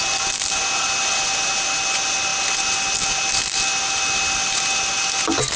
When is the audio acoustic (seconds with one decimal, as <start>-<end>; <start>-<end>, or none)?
0.0-5.6